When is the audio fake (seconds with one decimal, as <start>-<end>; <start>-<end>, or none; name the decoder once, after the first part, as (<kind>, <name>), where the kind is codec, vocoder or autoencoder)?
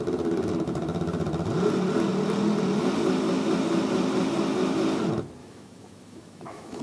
5.4-6.8 (autoencoder, DAC-VAE)